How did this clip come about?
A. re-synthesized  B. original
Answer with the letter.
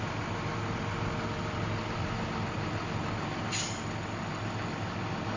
B